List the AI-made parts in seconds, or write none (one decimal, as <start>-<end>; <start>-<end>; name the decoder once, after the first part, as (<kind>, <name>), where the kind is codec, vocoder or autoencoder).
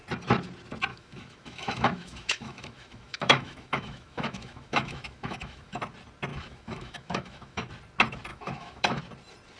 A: 0.9-5.8 (autoencoder, DAC-VAE); 6.3-7.7; 8.3-9.0